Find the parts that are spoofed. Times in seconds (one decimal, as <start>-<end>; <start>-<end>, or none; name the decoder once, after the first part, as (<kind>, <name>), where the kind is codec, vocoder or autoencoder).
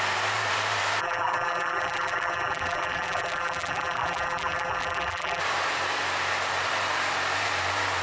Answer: 1.0-5.4 (vocoder, BigVGAN v2)